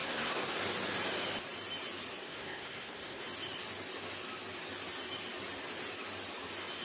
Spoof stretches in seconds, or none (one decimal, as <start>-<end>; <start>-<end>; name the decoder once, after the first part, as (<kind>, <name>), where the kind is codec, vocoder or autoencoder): 0.0-0.6 (codec, SNAC); 2.2-3.2